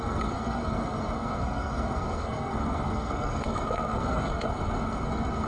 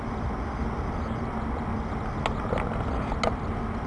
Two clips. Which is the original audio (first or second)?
second